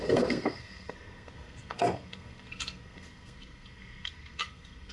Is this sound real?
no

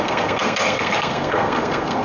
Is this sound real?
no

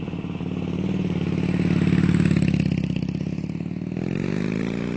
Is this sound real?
yes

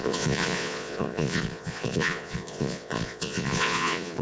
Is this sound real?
no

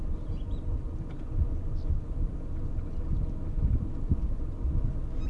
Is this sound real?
yes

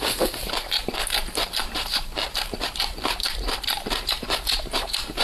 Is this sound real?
no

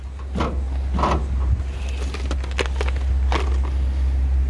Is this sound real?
yes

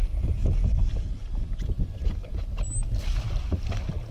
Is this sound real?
yes